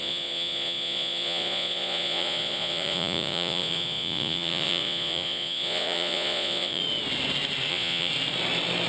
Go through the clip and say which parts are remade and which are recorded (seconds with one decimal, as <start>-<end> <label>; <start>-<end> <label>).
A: 0.0-6.8 remade; 6.8-7.7 recorded; 7.7-8.1 remade; 8.1-8.9 recorded